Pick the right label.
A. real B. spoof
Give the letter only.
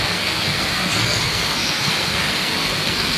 B